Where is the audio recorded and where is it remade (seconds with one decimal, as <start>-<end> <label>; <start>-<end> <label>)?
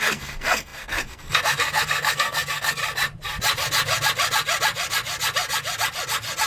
0.0-2.8 remade; 2.8-6.5 recorded